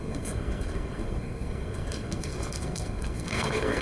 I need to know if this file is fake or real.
fake